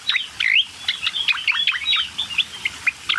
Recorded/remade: recorded